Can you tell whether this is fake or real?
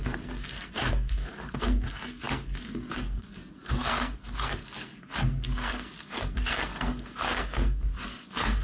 fake